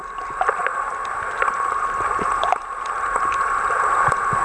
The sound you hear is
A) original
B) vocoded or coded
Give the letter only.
A